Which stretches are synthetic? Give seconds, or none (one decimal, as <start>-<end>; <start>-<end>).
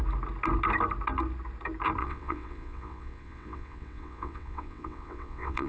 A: 2.0-5.7